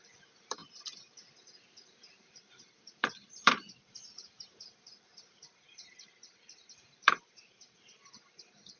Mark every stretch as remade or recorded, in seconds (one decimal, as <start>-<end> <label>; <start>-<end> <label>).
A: 0.0-0.6 remade; 0.6-1.8 recorded; 1.8-8.8 remade